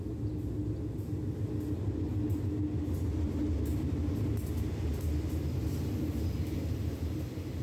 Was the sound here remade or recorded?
recorded